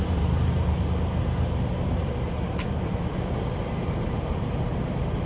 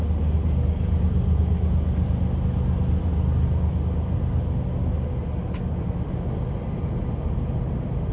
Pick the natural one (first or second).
second